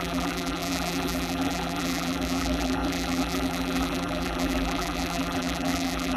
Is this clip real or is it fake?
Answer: fake